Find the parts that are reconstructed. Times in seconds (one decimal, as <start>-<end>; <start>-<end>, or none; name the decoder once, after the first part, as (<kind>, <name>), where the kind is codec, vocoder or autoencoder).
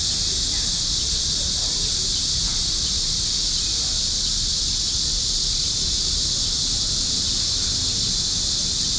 none